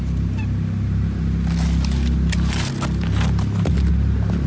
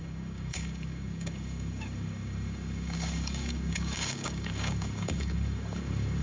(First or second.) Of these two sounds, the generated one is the second